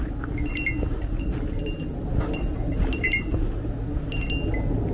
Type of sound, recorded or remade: recorded